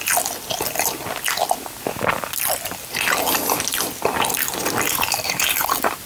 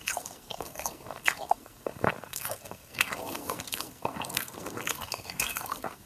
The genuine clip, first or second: first